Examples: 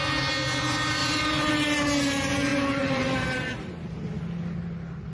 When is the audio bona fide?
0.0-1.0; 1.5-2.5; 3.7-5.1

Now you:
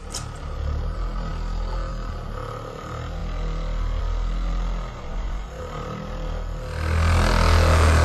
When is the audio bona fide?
0.0-4.9; 5.6-8.0

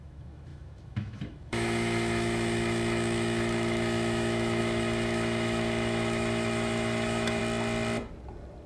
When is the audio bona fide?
7.4-8.7

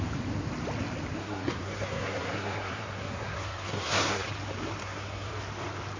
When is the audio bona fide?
0.0-1.2; 4.3-4.8; 5.3-6.0

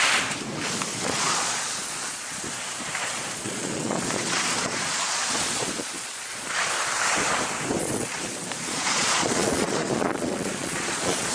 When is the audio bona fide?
0.0-0.9; 2.4-3.0; 6.7-7.8

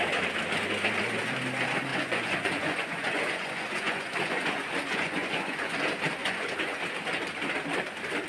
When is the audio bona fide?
0.0-1.9; 5.7-6.2; 6.8-8.3

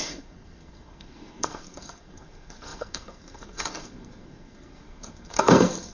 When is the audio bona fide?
none